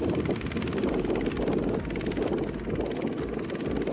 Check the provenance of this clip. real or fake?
real